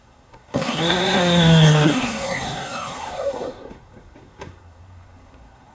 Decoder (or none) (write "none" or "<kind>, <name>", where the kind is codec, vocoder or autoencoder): codec, SNAC